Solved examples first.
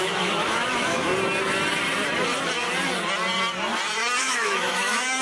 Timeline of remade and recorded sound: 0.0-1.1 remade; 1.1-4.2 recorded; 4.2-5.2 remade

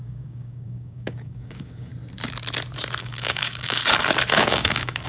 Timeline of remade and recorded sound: 0.0-1.9 remade; 1.9-3.0 recorded; 3.0-3.8 remade; 3.8-4.3 recorded; 4.3-5.1 remade

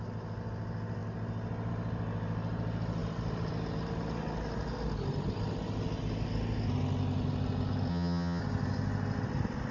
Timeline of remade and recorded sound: 0.0-7.9 recorded; 7.9-8.4 remade; 8.4-9.7 recorded

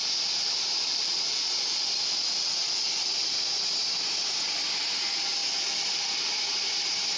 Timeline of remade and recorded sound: 0.0-3.3 remade; 3.3-5.4 recorded; 5.4-6.2 remade; 6.2-7.2 recorded

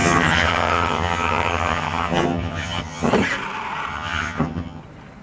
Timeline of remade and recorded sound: 0.0-3.1 remade; 3.1-3.9 recorded; 3.9-4.8 remade; 4.8-5.2 recorded

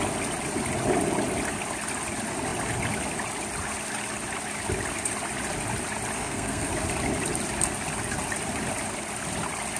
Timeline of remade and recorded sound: 0.0-6.2 recorded; 6.2-6.7 remade; 6.7-9.8 recorded